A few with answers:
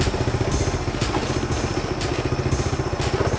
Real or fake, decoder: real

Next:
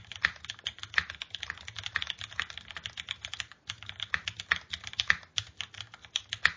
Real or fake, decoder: real